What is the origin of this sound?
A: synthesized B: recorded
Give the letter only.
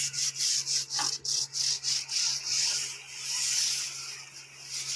B